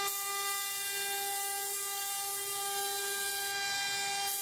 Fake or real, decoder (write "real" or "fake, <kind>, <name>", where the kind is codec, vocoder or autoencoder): real